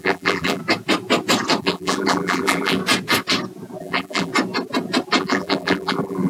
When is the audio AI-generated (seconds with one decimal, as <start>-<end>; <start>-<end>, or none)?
0.0-0.6; 1.6-2.8; 3.8-4.3; 5.2-6.3